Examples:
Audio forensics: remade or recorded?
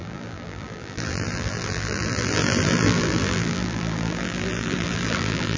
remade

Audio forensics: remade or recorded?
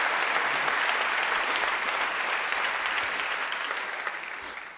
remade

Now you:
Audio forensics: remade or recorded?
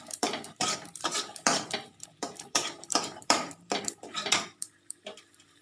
remade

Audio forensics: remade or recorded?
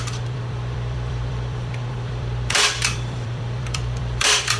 remade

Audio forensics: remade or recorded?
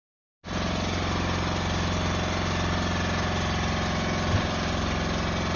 recorded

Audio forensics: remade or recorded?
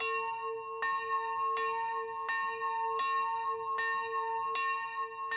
recorded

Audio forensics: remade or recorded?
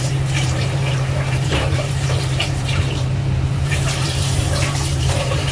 remade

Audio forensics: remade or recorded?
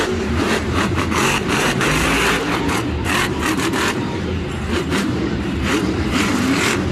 remade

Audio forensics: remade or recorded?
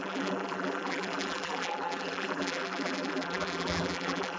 remade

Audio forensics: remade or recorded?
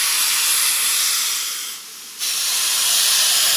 remade